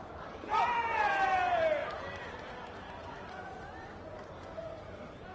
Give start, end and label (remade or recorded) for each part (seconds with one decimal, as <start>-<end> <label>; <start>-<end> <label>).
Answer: 0.0-5.3 recorded